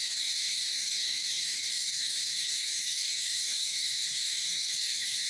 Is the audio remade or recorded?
remade